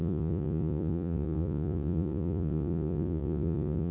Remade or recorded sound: remade